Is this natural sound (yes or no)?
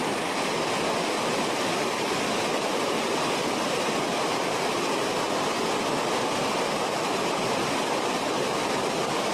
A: yes